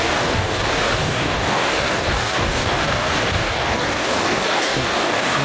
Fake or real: fake